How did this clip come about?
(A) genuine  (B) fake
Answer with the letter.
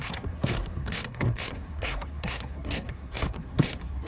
B